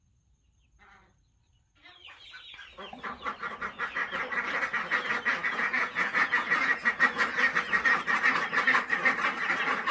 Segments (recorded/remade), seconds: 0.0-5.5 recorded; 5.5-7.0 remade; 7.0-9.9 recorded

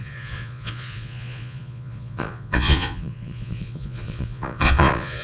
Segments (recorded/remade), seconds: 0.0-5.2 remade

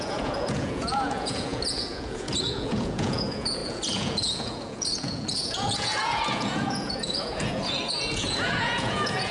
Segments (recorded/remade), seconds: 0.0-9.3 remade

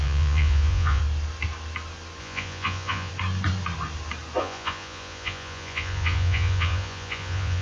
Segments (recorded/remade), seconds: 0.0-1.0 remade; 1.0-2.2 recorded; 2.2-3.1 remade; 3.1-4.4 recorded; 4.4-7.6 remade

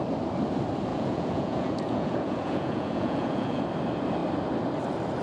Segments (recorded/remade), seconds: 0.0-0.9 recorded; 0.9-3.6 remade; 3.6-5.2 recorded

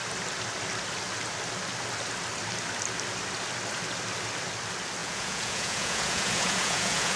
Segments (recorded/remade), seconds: 0.0-5.0 recorded; 5.0-7.2 remade

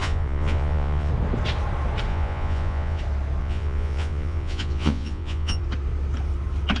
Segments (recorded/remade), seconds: 0.0-1.1 remade; 1.1-2.1 recorded; 2.1-3.0 remade; 3.0-3.4 recorded; 3.4-5.6 remade; 5.6-6.8 recorded